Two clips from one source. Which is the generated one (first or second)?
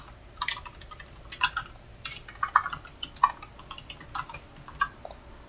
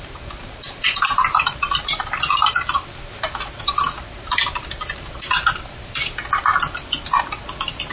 second